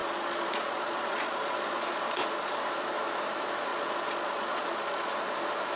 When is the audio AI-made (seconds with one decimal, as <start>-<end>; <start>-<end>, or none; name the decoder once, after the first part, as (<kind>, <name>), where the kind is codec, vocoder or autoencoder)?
0.0-2.0 (vocoder, Vocos); 3.7-5.1